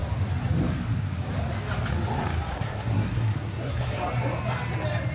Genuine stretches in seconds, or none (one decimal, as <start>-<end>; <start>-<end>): 0.0-2.5; 4.0-5.1